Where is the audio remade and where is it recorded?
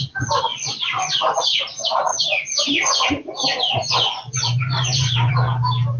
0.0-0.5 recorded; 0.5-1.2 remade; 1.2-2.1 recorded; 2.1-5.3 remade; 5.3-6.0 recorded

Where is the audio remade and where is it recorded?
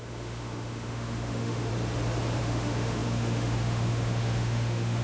0.0-1.7 remade; 1.7-2.4 recorded; 2.4-5.0 remade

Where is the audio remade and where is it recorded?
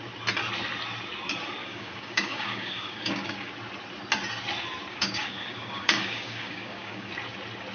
0.0-1.6 recorded; 1.6-3.5 remade; 3.5-4.9 recorded; 4.9-7.1 remade; 7.1-7.7 recorded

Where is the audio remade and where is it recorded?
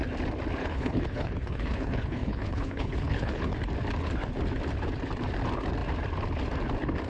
0.0-0.6 recorded; 0.6-3.5 remade; 3.5-7.1 recorded